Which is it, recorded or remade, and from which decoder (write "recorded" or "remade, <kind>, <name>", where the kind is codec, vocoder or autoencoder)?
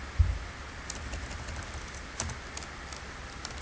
recorded